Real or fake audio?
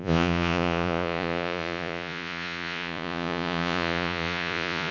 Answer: fake